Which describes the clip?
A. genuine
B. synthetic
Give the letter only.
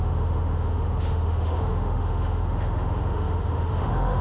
B